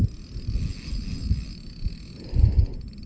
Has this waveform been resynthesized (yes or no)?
no